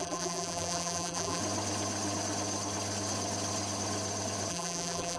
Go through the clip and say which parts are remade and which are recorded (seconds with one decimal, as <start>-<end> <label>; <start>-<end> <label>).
0.0-1.4 remade; 1.4-4.5 recorded; 4.5-5.2 remade